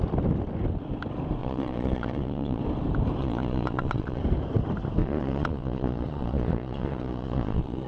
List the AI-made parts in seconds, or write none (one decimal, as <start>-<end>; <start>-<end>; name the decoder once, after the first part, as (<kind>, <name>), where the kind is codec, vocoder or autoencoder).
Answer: 1.4-2.6 (vocoder, Vocos); 3.2-4.2; 5.0-7.9